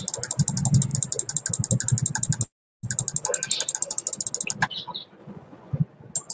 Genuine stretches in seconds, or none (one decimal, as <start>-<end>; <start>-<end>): 0.0-5.2; 5.8-6.3